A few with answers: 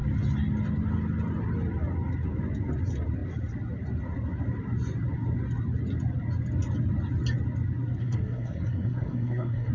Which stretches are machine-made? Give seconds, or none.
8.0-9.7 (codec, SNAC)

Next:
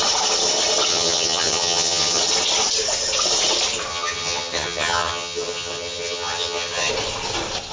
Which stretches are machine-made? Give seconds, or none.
0.9-2.2 (vocoder, HiFi-GAN); 3.9-6.9

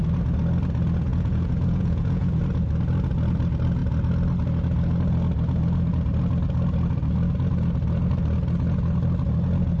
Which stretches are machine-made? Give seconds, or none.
1.1-2.4 (vocoder, Vocos)

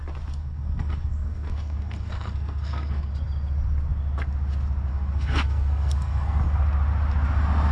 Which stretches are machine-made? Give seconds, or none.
0.4-3.1 (codec, SNAC); 4.9-6.4

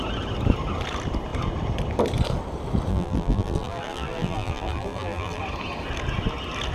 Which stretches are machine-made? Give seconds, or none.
2.9-5.4 (vocoder, BigVGAN v2)

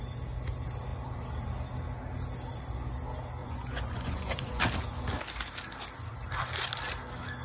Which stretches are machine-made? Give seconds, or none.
3.4-4.6 (vocoder, Vocos)

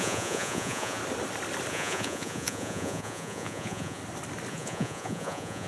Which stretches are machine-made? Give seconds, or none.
0.0-1.0 (vocoder, Vocos); 1.7-4.0; 4.5-5.7